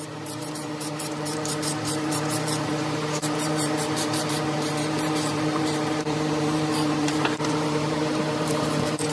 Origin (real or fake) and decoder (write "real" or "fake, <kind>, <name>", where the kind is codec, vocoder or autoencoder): fake, vocoder, BigVGAN v2